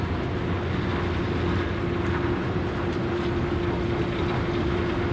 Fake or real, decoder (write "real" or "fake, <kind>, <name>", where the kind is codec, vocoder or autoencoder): real